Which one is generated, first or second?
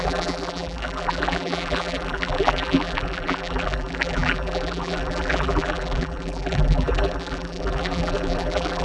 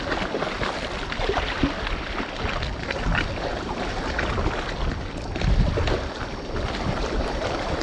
first